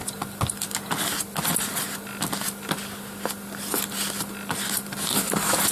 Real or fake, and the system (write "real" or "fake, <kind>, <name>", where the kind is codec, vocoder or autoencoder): real